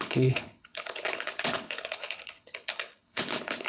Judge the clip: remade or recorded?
remade